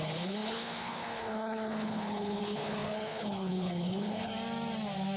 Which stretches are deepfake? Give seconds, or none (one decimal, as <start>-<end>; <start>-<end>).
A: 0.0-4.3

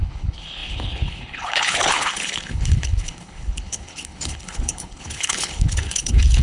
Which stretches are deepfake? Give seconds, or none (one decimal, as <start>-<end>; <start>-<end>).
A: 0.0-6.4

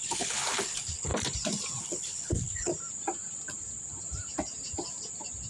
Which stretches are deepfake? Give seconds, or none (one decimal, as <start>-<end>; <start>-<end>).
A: 0.0-1.1; 1.8-2.7

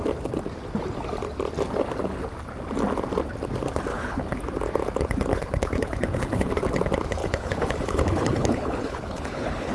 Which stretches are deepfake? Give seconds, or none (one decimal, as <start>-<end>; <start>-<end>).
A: 3.9-4.4; 5.3-6.5; 7.2-9.7

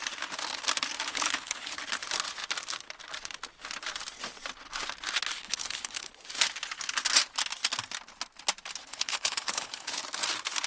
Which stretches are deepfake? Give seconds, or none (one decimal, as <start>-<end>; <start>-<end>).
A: 1.1-1.8; 5.4-6.1; 8.8-10.0

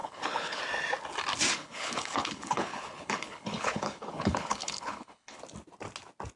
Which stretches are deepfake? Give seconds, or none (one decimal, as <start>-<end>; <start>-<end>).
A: 0.0-0.6; 1.6-5.4

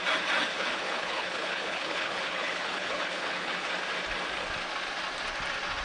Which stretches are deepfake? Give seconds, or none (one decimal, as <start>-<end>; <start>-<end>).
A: 0.5-3.7

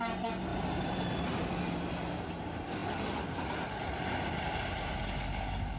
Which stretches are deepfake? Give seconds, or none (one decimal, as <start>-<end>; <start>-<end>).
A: none